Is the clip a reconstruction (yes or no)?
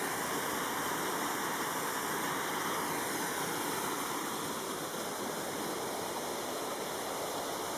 no